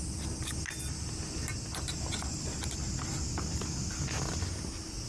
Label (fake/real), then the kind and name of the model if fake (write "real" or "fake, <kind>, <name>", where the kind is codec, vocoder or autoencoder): real